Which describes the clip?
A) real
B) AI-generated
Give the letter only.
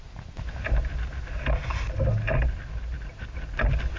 A